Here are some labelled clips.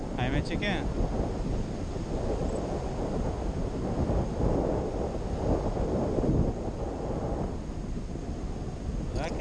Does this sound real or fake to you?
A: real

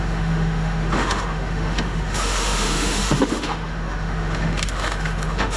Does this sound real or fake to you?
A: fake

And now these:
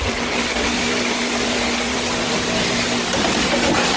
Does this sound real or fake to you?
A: real